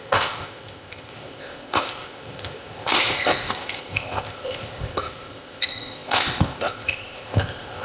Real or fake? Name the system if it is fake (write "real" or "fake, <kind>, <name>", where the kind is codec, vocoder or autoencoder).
fake, codec, ZipCodec